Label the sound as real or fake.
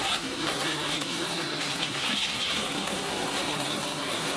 fake